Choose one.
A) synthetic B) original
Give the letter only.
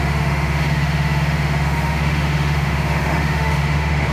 A